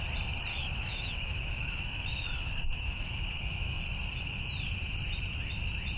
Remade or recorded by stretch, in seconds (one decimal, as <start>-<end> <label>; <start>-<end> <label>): 0.0-0.5 recorded; 0.5-3.8 remade; 3.8-6.0 recorded